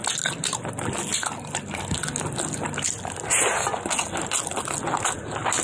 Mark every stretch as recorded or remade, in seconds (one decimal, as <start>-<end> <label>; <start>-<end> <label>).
0.0-5.6 recorded